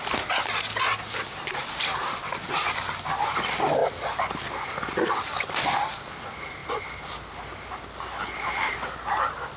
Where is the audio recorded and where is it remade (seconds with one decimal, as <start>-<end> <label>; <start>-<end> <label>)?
0.0-9.6 recorded